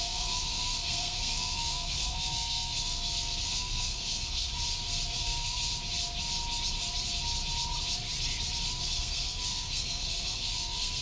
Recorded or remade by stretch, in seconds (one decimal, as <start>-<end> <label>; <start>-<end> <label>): 0.0-4.5 remade; 4.5-5.1 recorded; 5.1-5.7 remade; 5.7-8.8 recorded; 8.8-11.0 remade